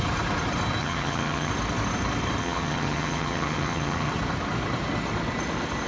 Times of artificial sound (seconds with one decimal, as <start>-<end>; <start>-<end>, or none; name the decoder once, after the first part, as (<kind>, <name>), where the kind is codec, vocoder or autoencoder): 0.8-1.5 (vocoder, HiFi-GAN); 2.4-4.1